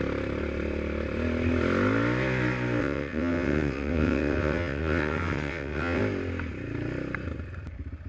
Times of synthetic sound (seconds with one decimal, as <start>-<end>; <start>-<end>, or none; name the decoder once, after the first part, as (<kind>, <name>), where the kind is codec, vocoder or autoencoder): 2.8-6.0 (vocoder, WaveNeXt)